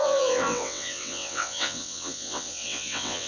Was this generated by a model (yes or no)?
yes